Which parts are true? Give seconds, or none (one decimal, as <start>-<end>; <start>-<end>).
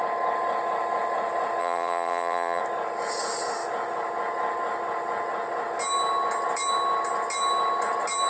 0.0-1.6; 2.6-8.3